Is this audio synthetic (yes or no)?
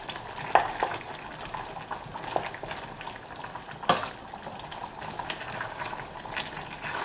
no